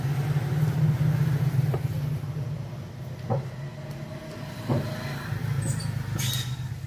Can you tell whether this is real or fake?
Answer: real